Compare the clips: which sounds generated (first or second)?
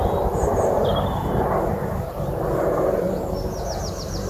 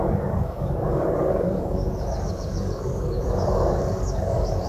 second